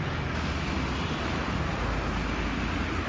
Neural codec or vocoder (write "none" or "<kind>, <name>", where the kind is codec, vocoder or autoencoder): none